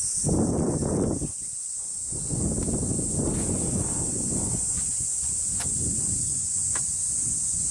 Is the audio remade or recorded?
remade